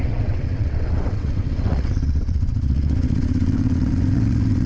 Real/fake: fake